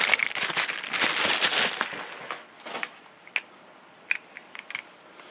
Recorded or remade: recorded